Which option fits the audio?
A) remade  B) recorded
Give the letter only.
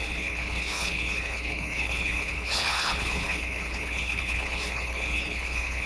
A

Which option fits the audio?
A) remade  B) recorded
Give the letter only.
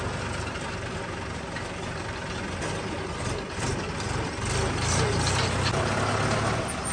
B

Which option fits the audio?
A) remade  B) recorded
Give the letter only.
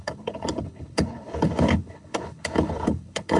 A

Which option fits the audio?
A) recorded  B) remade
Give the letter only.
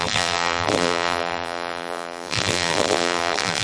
B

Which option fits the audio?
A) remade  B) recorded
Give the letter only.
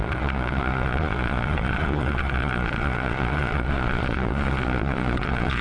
A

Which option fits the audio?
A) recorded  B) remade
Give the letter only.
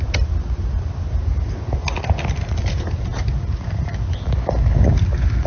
A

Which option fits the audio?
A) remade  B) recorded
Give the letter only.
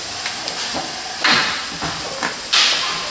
B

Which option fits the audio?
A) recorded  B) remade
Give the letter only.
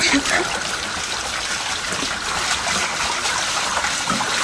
A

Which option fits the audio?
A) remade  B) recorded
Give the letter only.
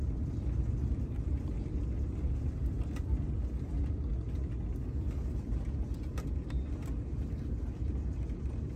B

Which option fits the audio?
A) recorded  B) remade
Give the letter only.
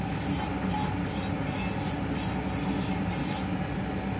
A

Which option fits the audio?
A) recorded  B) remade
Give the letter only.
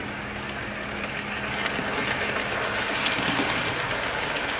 A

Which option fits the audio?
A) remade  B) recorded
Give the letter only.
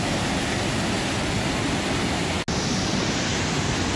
B